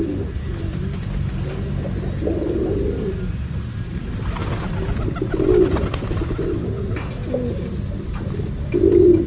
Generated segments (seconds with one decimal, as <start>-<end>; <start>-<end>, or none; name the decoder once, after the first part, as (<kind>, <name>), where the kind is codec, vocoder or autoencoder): none